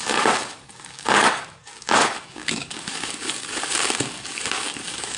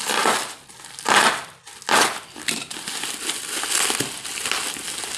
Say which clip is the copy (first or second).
first